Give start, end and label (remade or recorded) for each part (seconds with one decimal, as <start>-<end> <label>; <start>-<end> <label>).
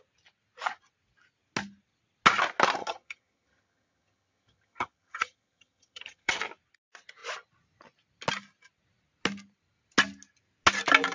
0.0-2.8 recorded; 2.8-6.4 remade; 6.4-11.1 recorded